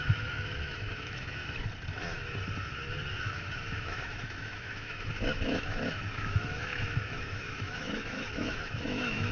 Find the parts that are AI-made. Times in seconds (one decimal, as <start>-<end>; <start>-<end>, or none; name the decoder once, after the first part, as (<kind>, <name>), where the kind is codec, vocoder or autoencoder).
0.0-1.4 (autoencoder, DAC-VAE); 3.1-9.3